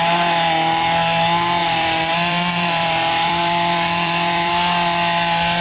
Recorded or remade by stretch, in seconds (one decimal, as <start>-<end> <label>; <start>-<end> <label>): 0.0-1.6 recorded; 1.6-4.5 remade; 4.5-5.6 recorded